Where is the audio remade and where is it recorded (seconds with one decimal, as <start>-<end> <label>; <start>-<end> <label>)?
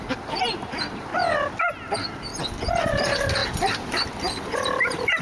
0.0-1.1 remade; 1.1-1.9 recorded; 1.9-2.3 remade; 2.3-2.9 recorded; 2.9-3.4 remade; 3.4-4.8 recorded; 4.8-5.2 remade